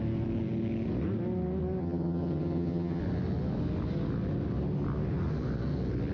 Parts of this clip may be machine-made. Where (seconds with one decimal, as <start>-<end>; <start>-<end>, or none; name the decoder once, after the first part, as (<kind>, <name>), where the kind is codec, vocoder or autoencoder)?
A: 1.8-3.0 (vocoder, HiFi-GAN)